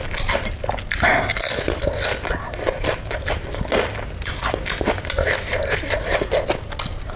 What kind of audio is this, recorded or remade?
recorded